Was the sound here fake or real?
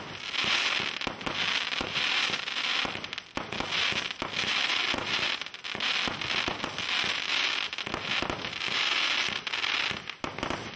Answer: real